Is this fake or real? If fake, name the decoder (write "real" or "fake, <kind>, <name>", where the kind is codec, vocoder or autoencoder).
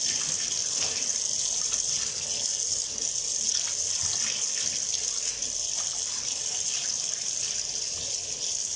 real